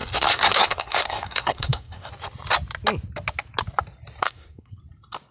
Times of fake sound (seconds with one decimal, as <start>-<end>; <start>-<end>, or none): 0.0-2.1; 4.2-4.8